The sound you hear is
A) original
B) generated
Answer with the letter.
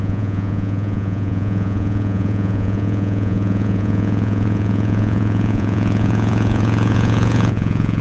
B